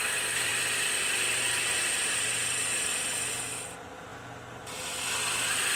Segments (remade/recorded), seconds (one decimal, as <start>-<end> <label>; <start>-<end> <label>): 0.0-5.8 recorded